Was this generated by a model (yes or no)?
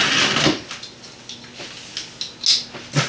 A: no